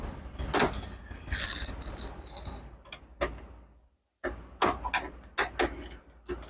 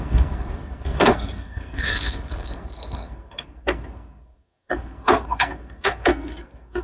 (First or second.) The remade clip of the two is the second